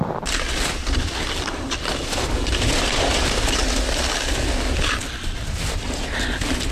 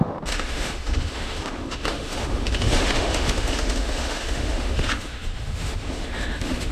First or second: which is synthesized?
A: second